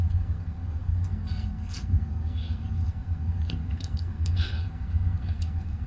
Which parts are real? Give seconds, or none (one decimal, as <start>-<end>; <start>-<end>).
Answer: none